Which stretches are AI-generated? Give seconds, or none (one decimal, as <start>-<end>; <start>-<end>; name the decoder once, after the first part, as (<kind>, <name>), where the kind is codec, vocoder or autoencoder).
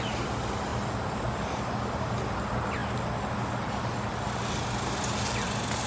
none